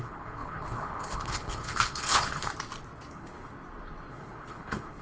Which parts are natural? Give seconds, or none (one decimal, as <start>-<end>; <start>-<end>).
2.5-3.1; 3.5-4.1